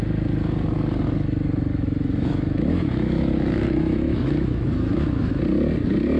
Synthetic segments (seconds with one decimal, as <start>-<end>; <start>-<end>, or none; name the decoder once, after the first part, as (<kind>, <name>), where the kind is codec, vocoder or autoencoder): 1.7-5.4 (autoencoder, DAC-VAE)